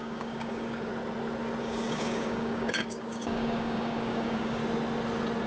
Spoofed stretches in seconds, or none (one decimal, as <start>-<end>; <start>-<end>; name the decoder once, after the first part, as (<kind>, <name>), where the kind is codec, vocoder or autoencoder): 0.0-0.9 (codec, DAC); 1.6-4.6